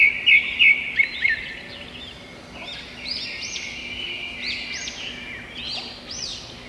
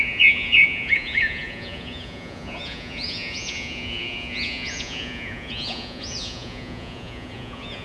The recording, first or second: first